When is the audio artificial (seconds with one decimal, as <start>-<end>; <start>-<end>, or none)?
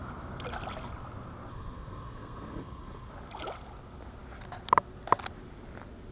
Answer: 1.5-3.1